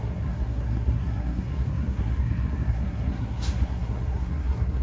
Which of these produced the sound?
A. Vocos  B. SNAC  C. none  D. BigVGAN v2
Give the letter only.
B